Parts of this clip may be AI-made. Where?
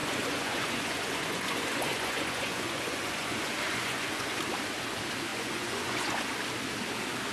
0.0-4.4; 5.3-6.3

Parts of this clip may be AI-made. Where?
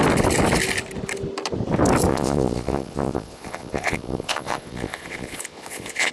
2.1-6.1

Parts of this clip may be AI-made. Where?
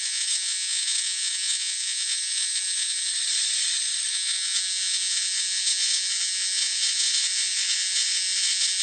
0.0-3.1; 4.1-8.8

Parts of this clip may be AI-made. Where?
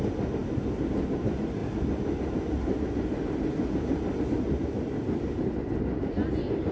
none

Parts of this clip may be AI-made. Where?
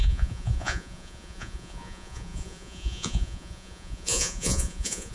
0.0-5.1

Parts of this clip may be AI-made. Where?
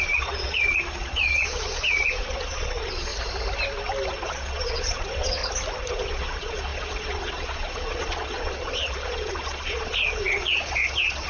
0.0-3.1; 4.1-5.4; 5.9-11.3